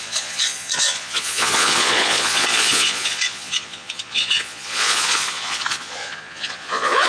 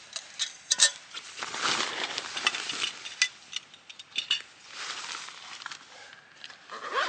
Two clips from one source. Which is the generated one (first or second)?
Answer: first